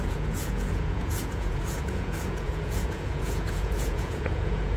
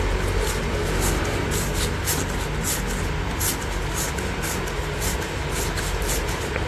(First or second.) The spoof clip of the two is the first